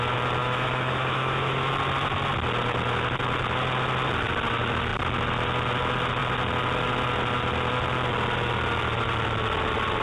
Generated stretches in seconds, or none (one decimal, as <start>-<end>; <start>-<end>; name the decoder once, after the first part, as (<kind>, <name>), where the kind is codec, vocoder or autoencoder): 0.4-1.7 (autoencoder, DAC-VAE)